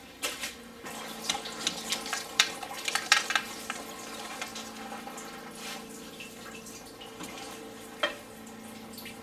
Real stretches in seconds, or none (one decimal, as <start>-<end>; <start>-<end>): 0.0-9.2